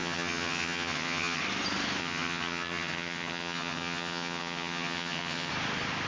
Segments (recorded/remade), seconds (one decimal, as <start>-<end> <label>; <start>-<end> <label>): 0.0-1.4 remade; 1.4-2.0 recorded; 2.0-5.5 remade; 5.5-6.1 recorded